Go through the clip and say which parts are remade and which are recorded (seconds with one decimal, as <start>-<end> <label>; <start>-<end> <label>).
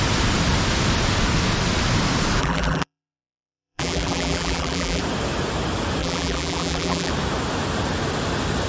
0.0-2.4 recorded; 2.4-5.0 remade; 5.0-6.0 recorded; 6.0-7.1 remade; 7.1-8.7 recorded